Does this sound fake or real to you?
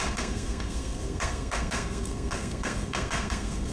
fake